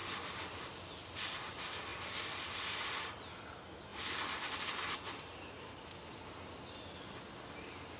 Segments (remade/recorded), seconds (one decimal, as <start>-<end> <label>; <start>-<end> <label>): 0.0-1.4 remade; 1.4-1.9 recorded; 1.9-3.5 remade; 3.5-3.9 recorded; 3.9-5.2 remade; 5.2-8.0 recorded